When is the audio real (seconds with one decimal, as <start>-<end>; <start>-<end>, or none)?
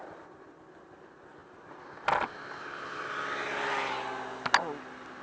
0.0-5.2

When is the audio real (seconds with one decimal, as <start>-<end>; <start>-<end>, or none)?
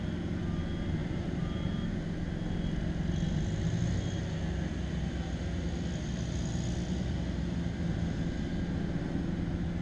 0.0-1.0; 2.2-9.8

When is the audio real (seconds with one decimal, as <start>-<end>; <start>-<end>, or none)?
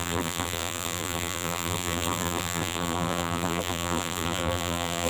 none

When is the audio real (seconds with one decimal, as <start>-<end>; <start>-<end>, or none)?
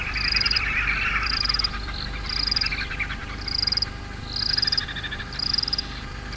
2.7-6.4